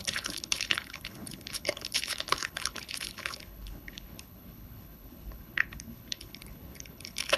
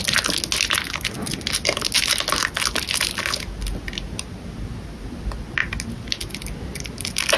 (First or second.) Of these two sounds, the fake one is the first